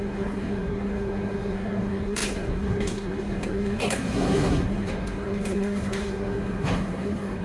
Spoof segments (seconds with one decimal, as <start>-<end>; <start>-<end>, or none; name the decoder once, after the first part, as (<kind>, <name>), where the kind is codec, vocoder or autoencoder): 0.0-7.4 (codec, SNAC)